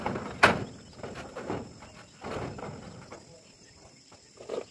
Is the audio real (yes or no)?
yes